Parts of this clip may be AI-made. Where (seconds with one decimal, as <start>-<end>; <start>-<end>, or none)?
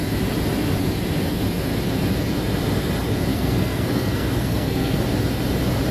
3.3-5.0